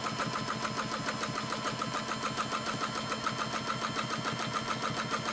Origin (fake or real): real